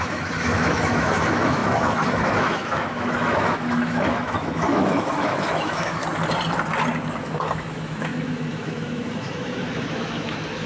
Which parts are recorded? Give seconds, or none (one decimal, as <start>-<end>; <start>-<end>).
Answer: 6.0-7.2